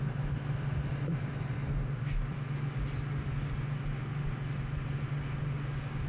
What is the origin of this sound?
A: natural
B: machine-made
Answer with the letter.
A